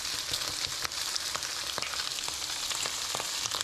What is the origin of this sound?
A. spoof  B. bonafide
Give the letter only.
B